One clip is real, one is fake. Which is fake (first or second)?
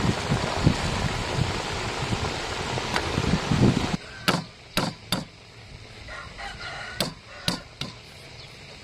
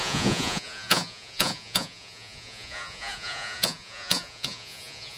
second